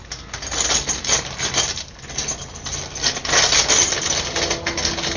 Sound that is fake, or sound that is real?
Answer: real